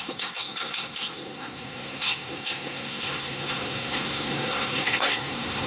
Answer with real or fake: fake